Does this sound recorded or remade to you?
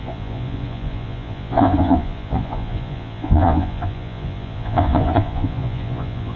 remade